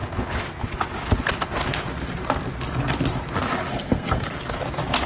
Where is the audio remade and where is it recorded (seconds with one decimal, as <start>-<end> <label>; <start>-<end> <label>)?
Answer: 0.0-3.7 recorded; 3.7-4.3 remade; 4.3-5.1 recorded